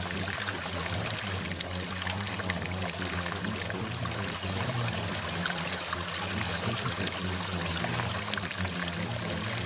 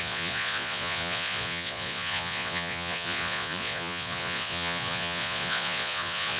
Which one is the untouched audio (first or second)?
first